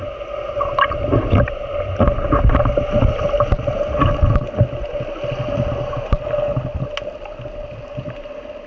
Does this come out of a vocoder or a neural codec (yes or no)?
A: no